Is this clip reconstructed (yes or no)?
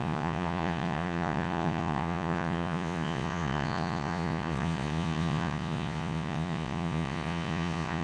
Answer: yes